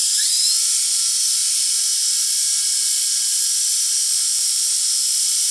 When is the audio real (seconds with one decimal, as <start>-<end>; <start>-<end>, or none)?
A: 0.0-5.5